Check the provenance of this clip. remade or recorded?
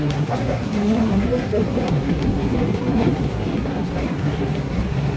remade